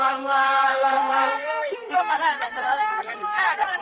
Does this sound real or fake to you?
fake